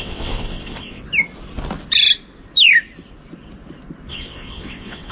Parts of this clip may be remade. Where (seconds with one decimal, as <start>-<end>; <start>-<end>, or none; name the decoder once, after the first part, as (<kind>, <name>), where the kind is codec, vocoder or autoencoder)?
0.0-1.0 (vocoder, WaveNeXt); 4.1-5.1